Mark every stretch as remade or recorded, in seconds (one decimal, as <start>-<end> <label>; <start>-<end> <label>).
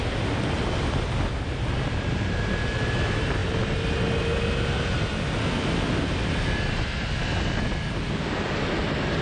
0.0-9.2 recorded